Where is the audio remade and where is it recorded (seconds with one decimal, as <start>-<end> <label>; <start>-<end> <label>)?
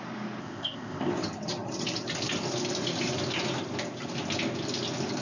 0.0-0.4 recorded; 0.4-1.1 remade; 1.1-5.2 recorded